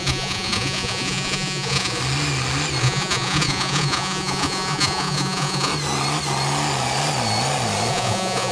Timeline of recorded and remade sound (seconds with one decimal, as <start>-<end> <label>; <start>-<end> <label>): 0.0-2.0 remade; 2.0-2.8 recorded; 2.8-5.7 remade; 5.7-7.9 recorded; 7.9-8.5 remade